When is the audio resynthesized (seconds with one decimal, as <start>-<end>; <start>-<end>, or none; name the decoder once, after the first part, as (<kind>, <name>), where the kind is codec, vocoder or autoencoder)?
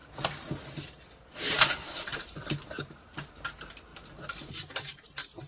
0.0-3.3 (vocoder, BigVGAN v2)